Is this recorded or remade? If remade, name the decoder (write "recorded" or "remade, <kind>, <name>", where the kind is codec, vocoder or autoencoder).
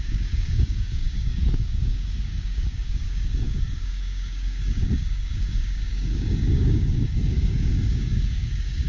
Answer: remade, codec, DAC